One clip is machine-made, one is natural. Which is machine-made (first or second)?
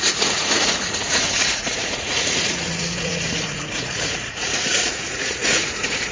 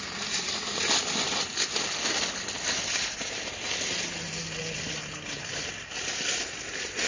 first